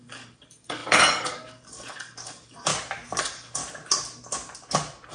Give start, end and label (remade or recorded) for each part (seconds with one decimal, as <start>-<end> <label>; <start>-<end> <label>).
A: 0.0-2.7 remade; 2.7-3.2 recorded; 3.2-3.6 remade; 3.6-5.1 recorded